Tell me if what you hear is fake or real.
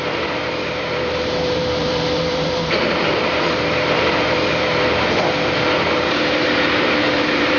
fake